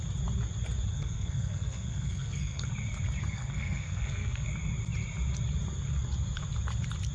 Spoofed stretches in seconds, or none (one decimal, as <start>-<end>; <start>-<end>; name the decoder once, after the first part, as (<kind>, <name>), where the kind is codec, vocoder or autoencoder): 0.9-2.7 (codec, SNAC); 3.2-4.5